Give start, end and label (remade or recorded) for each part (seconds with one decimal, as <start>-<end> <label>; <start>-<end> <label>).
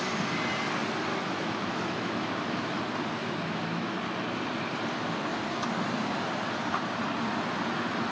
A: 0.0-1.1 recorded; 1.1-2.8 remade; 2.8-3.2 recorded; 3.2-3.9 remade; 3.9-8.1 recorded